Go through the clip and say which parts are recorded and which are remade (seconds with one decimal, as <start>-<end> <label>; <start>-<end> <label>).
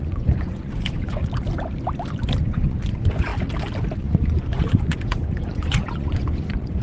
0.0-1.2 remade; 1.2-2.4 recorded; 2.4-3.3 remade; 3.3-4.0 recorded; 4.0-6.8 remade